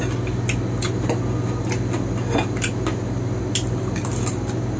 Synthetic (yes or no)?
no